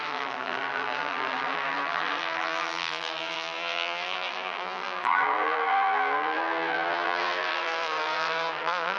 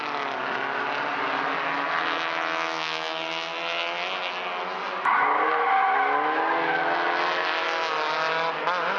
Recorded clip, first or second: second